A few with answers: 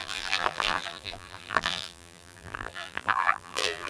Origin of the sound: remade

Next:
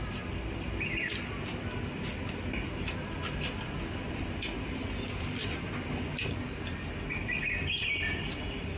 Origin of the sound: recorded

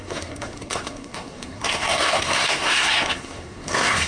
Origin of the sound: remade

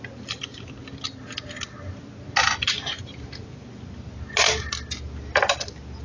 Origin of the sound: recorded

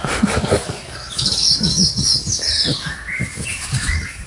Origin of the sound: remade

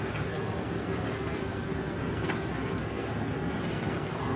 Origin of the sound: remade